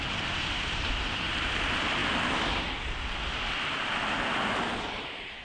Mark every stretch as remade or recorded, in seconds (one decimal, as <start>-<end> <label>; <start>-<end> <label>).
0.0-2.0 remade; 2.0-3.7 recorded; 3.7-5.4 remade